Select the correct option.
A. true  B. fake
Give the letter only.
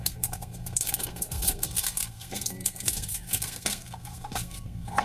B